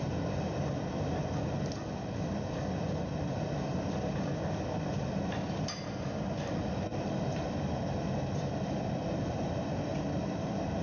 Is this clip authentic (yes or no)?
no